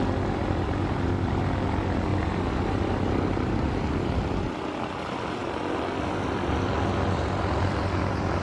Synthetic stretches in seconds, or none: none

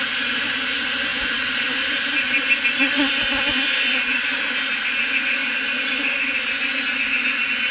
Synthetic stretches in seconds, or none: 1.1-2.6 (vocoder, BigVGAN v2); 5.4-6.8